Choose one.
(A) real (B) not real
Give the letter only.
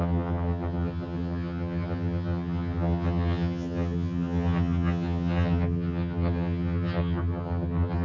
B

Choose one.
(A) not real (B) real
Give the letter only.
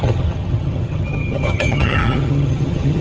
A